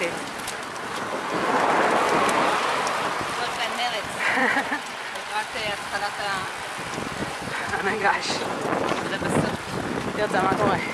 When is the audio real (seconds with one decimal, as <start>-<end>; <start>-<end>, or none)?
0.0-4.4; 5.3-7.2; 9.1-10.9